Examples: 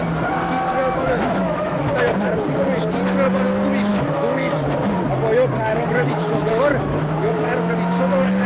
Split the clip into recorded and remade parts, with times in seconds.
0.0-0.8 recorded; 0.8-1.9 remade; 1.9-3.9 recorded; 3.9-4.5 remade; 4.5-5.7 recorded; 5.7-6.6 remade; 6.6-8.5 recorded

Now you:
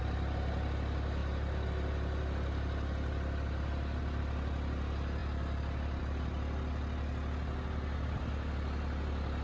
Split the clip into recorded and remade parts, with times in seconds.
0.0-9.4 recorded

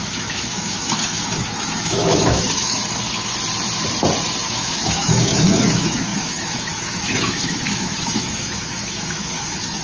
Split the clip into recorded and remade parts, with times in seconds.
0.0-2.8 remade; 2.8-4.5 recorded; 4.5-9.8 remade